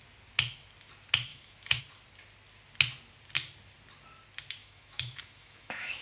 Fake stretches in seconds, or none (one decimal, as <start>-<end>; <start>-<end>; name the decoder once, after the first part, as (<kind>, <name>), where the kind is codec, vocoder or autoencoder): 1.3-1.8 (autoencoder, DAC-VAE); 4.6-6.0